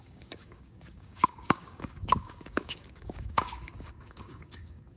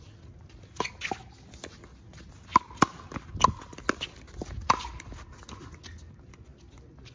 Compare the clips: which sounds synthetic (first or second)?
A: first